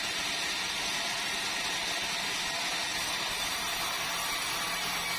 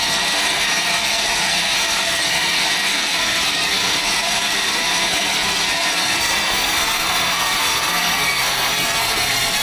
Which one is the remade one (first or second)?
second